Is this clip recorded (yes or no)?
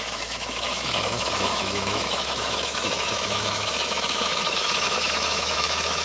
no